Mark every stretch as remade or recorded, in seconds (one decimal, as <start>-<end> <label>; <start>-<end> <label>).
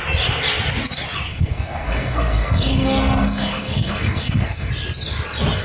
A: 0.0-1.3 recorded; 1.3-4.7 remade; 4.7-5.6 recorded